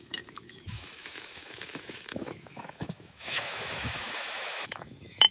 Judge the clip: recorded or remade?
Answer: remade